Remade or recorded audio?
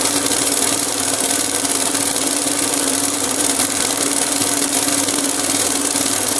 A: remade